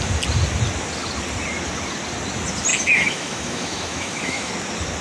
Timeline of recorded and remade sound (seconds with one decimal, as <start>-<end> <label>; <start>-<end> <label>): 0.0-2.7 recorded; 2.7-4.5 remade; 4.5-5.0 recorded